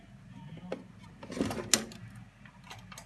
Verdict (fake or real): real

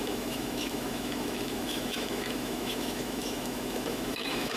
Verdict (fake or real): fake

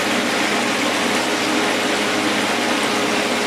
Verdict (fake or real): real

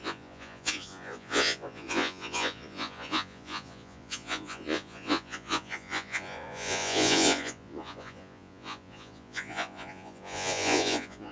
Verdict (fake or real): fake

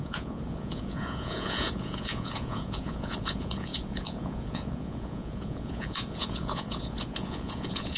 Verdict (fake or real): fake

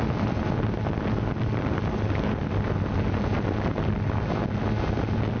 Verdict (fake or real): real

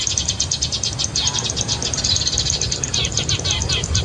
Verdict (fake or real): real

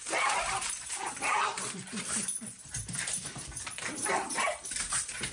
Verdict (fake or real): fake